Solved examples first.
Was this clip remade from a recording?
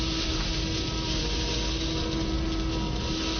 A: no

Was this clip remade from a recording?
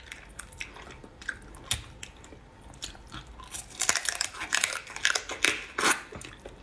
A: no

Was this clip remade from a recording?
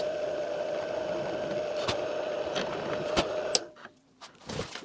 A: no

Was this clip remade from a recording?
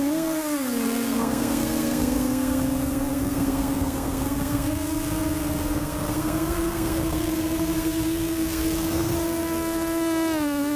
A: yes